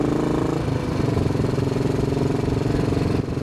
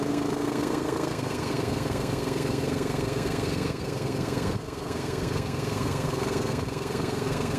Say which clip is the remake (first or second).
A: second